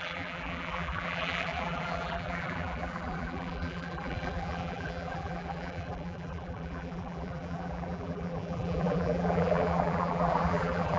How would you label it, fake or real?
fake